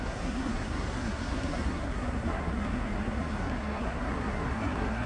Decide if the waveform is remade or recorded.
remade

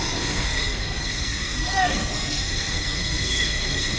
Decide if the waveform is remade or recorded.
remade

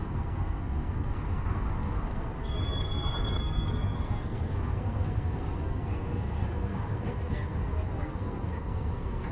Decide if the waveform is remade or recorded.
remade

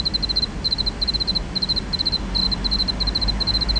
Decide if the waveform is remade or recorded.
recorded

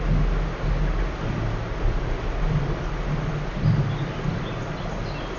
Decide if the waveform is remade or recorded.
recorded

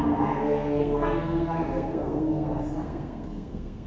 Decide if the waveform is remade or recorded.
remade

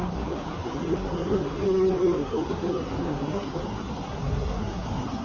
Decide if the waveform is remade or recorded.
remade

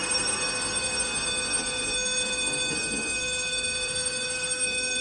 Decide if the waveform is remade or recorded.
remade